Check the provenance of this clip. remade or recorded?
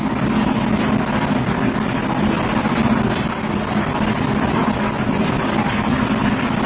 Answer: recorded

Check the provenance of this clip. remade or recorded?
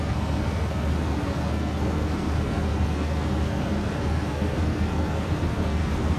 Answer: remade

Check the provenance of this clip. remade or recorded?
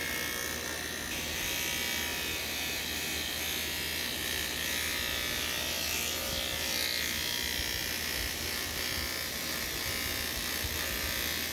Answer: recorded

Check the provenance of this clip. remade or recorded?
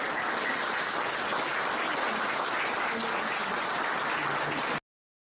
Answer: recorded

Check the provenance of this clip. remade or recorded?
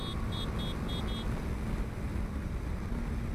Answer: recorded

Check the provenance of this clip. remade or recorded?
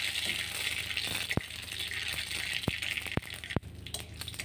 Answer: recorded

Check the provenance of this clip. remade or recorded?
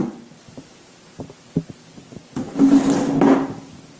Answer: recorded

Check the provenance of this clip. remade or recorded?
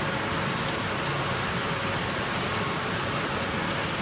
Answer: recorded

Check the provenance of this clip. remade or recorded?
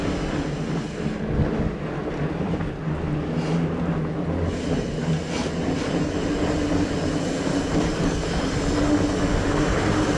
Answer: recorded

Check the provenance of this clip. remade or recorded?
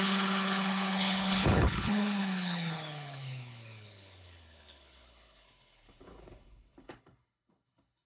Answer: remade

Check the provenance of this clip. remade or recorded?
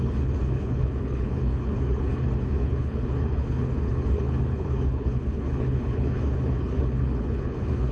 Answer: remade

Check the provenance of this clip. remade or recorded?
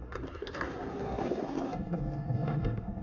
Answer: remade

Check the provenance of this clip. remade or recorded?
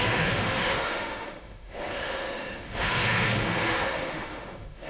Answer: remade